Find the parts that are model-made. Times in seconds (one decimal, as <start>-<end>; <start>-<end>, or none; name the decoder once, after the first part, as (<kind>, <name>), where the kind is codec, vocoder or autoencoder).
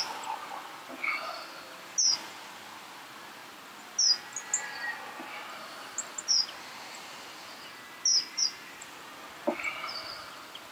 none